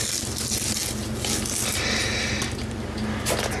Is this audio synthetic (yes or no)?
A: no